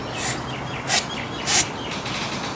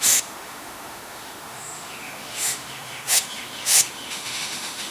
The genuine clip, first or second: first